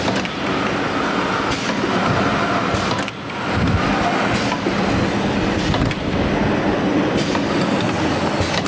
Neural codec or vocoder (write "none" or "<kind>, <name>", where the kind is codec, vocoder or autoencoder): none